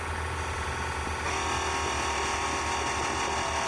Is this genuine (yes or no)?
yes